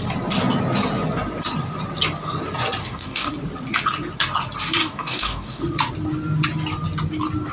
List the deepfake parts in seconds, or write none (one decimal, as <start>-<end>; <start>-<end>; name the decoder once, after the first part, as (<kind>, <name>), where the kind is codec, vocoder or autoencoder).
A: 2.8-3.3 (codec, DAC); 4.8-5.6